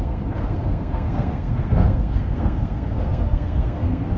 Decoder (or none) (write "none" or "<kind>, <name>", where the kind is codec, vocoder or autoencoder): codec, SNAC